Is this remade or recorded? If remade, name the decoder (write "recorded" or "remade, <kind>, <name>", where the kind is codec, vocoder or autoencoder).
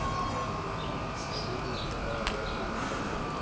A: recorded